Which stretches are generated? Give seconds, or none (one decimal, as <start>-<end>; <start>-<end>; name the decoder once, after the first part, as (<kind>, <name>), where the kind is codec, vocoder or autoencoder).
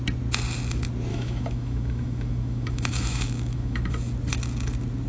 1.1-3.9 (autoencoder, DAC-VAE)